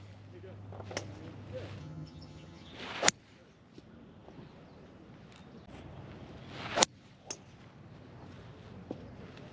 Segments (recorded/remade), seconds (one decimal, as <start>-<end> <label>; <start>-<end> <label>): 0.0-1.8 recorded; 1.8-2.7 remade; 2.7-9.5 recorded